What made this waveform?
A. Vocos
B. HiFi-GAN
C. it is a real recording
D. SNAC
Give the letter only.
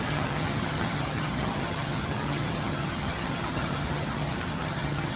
B